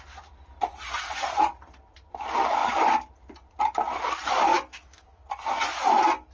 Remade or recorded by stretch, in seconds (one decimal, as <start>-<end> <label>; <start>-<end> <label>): 0.0-4.5 recorded; 4.5-5.2 remade; 5.2-6.3 recorded